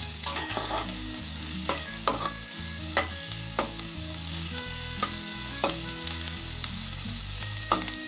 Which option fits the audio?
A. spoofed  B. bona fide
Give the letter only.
A